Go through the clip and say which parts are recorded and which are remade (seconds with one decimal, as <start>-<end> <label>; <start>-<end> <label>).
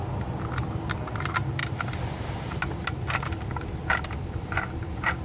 0.0-5.2 recorded